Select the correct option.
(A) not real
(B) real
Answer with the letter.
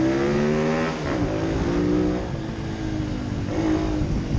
B